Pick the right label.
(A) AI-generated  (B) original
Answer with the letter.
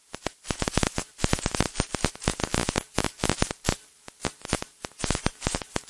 A